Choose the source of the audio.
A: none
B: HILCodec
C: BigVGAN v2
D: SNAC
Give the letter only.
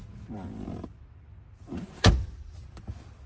A